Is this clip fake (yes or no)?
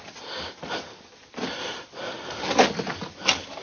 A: no